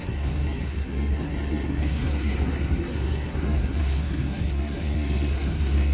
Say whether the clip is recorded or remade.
remade